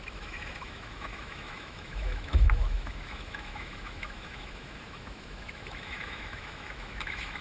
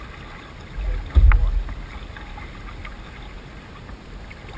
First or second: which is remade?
first